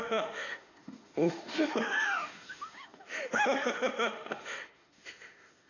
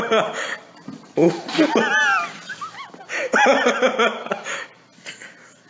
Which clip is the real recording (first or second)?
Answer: second